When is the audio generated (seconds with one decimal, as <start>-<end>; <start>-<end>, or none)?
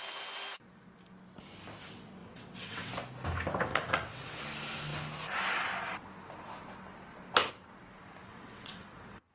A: 2.2-2.9; 3.7-4.4; 8.2-9.3